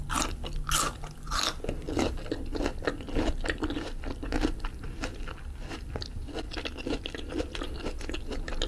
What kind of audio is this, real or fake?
real